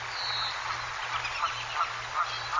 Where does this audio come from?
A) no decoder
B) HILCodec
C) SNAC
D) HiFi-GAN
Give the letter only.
A